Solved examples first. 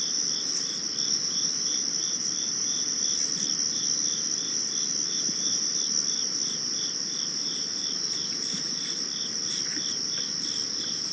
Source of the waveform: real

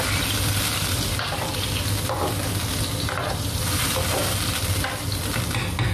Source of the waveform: real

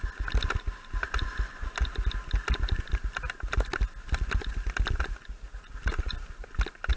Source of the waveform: real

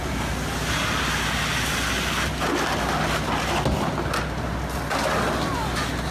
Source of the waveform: real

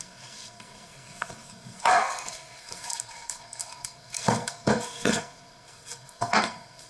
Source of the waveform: fake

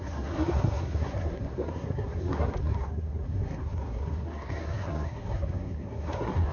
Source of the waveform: fake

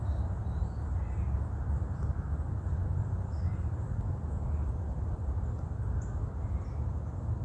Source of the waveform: real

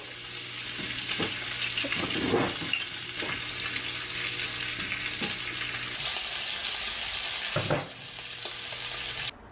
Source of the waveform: real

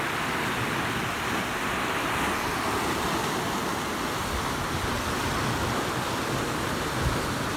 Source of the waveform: real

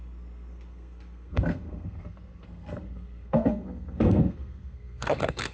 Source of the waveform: fake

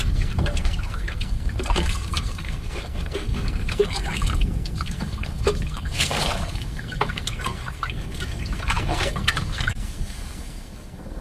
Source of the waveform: fake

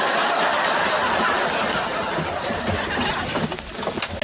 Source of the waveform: real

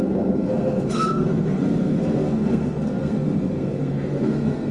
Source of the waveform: fake